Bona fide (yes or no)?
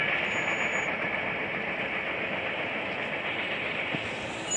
yes